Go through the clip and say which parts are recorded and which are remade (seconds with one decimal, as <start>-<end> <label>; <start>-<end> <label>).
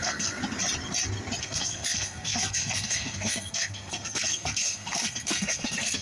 0.0-0.4 remade; 0.4-1.4 recorded; 1.4-6.0 remade